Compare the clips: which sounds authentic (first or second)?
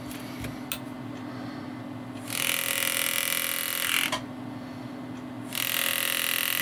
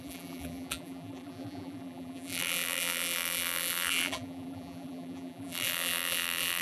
first